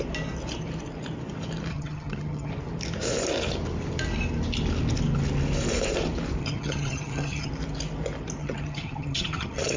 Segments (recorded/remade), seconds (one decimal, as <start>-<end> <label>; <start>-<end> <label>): 0.0-1.7 recorded; 1.7-2.5 remade; 2.5-6.4 recorded; 6.4-7.5 remade; 7.5-8.4 recorded; 8.4-9.8 remade